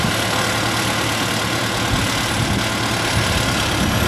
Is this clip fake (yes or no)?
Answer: no